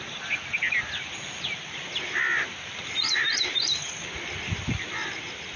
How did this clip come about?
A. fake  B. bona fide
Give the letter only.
B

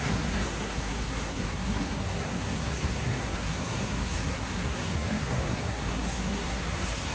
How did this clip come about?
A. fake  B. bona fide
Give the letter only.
A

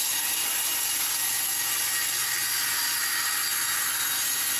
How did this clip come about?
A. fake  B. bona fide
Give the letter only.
B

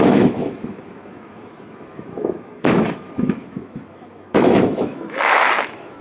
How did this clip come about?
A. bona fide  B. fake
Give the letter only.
B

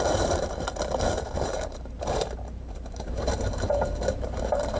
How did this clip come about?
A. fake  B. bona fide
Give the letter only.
A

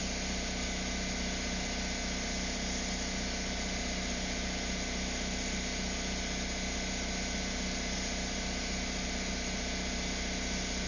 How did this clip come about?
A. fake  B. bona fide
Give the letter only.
B